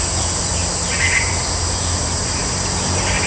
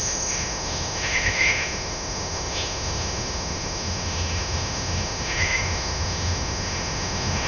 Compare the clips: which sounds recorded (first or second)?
first